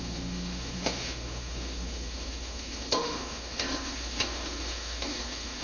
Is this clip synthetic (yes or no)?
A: yes